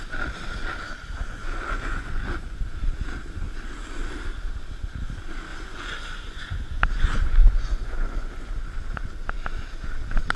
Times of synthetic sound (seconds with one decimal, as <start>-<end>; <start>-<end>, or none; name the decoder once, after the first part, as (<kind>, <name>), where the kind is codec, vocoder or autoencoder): 1.3-2.6 (vocoder, Vocos); 5.5-8.5